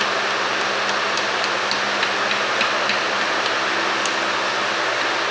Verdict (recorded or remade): recorded